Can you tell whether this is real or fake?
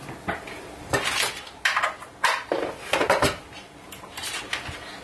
real